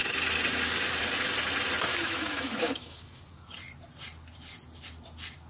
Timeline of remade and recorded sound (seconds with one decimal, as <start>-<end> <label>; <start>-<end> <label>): 0.0-1.9 recorded; 1.9-3.2 remade; 3.2-5.5 recorded